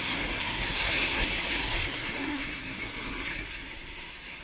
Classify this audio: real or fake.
fake